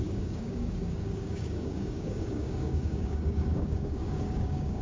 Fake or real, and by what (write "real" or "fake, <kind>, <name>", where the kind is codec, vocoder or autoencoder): fake, codec, DAC